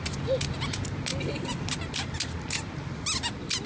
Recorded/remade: recorded